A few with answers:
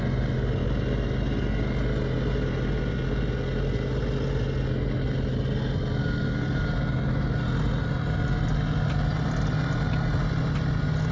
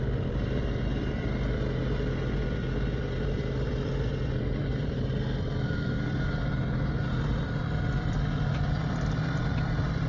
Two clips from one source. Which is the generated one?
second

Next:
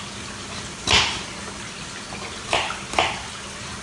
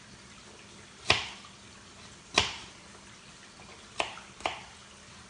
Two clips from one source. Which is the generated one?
second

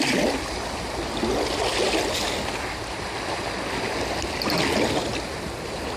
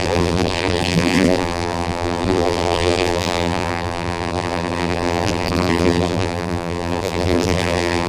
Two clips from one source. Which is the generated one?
second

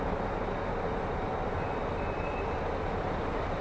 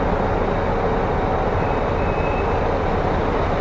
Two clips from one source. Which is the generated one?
first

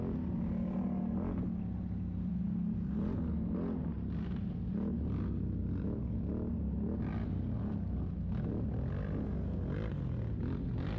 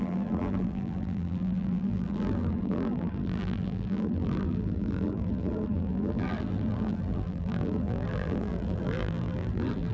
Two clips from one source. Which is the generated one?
second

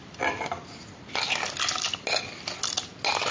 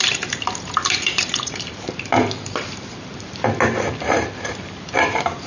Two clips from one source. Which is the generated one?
second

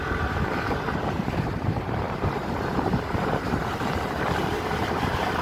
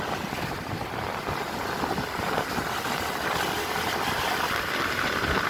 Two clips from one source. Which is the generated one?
first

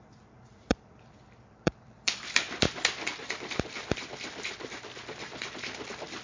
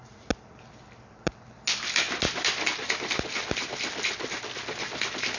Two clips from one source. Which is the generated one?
first